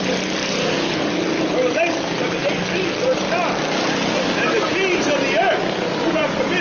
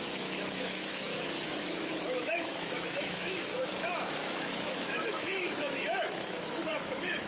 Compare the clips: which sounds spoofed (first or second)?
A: second